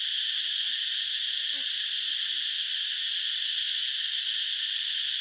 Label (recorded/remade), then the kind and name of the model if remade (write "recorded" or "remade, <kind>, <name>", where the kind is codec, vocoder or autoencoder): recorded